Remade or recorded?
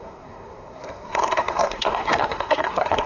remade